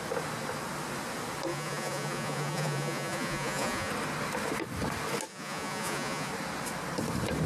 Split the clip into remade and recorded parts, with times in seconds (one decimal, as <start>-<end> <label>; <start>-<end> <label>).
0.0-1.5 recorded; 1.5-3.9 remade; 3.9-5.3 recorded; 5.3-6.3 remade; 6.3-7.5 recorded

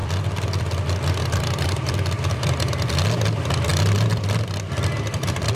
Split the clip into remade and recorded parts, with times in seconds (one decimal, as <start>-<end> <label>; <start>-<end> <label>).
0.0-2.9 remade; 2.9-3.7 recorded; 3.7-5.6 remade